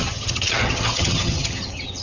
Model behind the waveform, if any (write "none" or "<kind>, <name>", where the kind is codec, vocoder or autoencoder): vocoder, HiFi-GAN